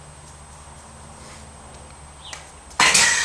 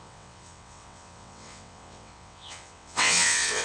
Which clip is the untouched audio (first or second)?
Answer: first